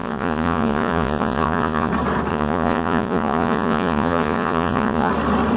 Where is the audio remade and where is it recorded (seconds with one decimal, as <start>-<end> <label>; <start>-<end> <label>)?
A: 0.0-1.9 remade; 1.9-2.3 recorded; 2.3-5.1 remade; 5.1-5.6 recorded